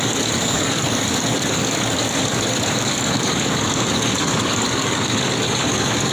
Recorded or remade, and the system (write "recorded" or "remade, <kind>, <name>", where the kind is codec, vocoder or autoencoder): remade, codec, DAC